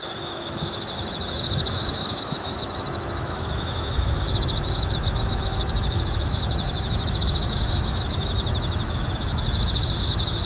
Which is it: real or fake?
fake